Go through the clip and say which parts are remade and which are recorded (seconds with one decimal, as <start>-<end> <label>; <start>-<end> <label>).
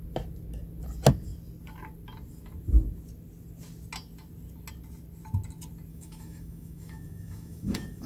0.0-5.9 recorded; 5.9-8.1 remade